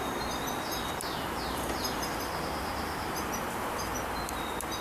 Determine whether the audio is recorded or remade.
recorded